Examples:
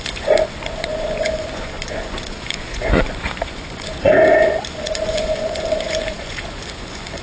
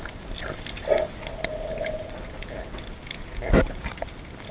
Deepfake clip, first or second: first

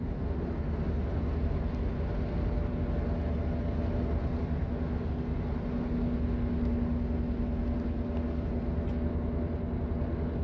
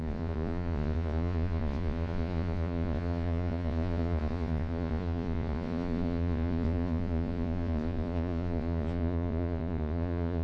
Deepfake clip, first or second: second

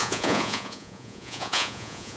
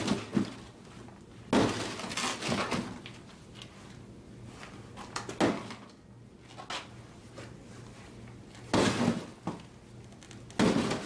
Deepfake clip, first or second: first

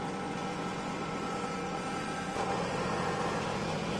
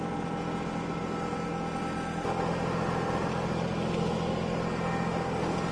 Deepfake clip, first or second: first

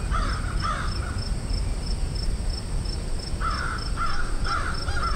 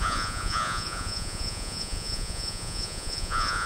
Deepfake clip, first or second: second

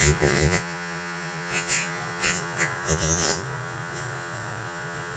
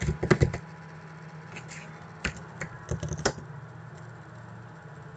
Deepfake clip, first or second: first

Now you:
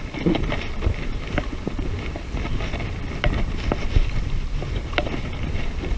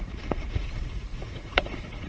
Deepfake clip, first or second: second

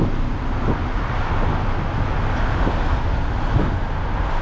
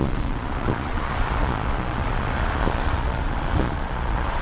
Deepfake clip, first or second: second